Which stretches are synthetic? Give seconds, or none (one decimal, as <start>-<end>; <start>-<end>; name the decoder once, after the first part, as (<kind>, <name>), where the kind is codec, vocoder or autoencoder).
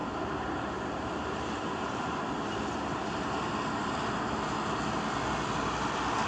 0.0-2.2 (vocoder, BigVGAN v2)